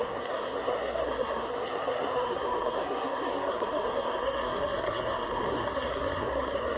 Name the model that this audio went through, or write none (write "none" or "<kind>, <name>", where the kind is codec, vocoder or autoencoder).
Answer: codec, SNAC